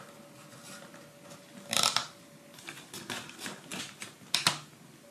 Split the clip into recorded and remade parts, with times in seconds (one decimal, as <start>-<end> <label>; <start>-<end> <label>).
0.0-5.1 recorded

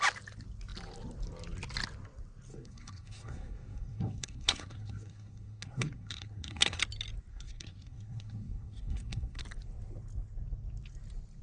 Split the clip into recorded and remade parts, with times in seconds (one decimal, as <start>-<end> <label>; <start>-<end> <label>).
0.0-2.5 recorded; 2.5-6.8 remade; 6.8-7.3 recorded; 7.3-9.4 remade; 9.4-11.4 recorded

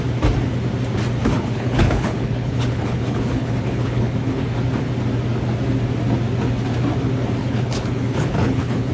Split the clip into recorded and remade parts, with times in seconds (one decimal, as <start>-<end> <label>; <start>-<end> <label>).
0.0-1.2 recorded; 1.2-4.4 remade; 4.4-7.4 recorded; 7.4-8.9 remade

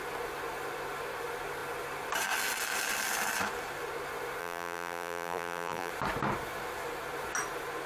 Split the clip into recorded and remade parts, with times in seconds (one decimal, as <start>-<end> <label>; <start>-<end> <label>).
0.0-4.4 recorded; 4.4-5.9 remade; 5.9-7.9 recorded

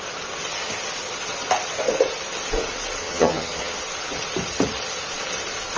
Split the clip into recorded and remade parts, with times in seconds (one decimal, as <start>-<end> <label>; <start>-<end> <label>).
0.0-3.0 recorded; 3.0-3.8 remade; 3.8-5.8 recorded

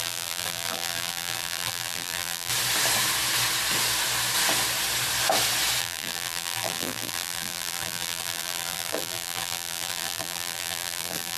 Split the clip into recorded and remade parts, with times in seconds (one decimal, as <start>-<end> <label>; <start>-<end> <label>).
0.0-2.5 remade; 2.5-5.8 recorded; 5.8-11.4 remade